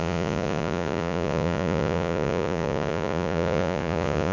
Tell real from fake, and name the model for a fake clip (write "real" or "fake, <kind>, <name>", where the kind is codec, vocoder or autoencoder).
fake, vocoder, Vocos